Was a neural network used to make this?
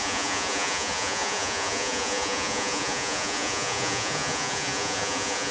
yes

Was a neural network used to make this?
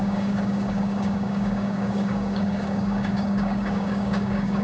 yes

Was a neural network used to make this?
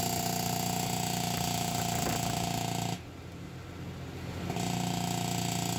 no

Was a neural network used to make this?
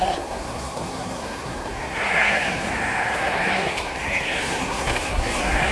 yes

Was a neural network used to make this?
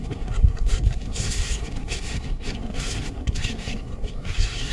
yes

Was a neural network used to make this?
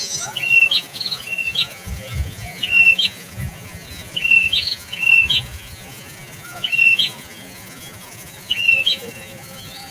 yes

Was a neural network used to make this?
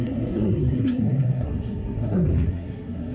yes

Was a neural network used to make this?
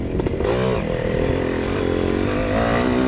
no